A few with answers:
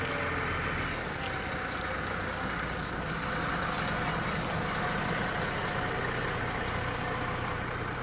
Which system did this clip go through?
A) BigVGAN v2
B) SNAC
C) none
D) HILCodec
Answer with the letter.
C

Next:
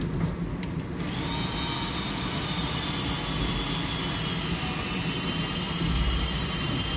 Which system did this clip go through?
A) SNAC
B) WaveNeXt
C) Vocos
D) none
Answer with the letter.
D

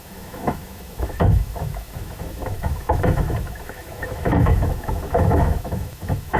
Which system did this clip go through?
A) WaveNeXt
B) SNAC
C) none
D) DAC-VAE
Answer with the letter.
D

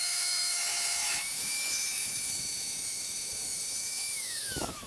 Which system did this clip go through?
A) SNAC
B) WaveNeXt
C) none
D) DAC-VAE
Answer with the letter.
D